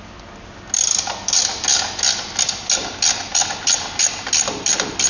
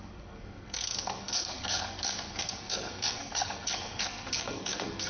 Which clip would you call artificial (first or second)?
second